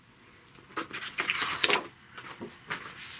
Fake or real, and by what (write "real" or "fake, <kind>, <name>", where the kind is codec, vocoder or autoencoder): real